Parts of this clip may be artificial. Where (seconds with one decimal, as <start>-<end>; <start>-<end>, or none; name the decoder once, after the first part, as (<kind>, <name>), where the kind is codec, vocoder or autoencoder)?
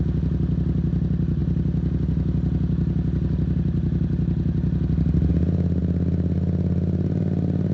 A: none